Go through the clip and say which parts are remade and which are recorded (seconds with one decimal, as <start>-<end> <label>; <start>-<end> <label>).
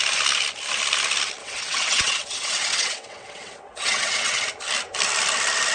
0.0-1.4 recorded; 1.4-4.4 remade; 4.4-5.7 recorded